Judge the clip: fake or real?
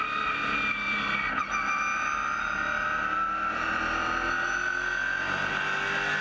real